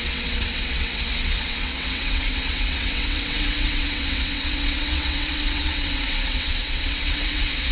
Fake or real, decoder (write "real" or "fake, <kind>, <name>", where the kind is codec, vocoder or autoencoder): fake, vocoder, WaveNeXt